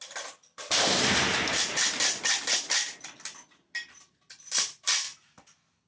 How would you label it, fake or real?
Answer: real